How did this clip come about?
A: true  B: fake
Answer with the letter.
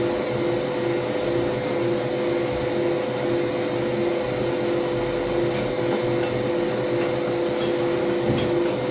A